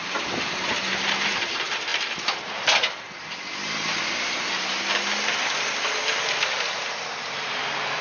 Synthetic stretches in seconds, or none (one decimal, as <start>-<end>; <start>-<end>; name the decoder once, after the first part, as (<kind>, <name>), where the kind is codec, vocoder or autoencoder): 0.0-1.9 (vocoder, BigVGAN v2); 6.3-8.0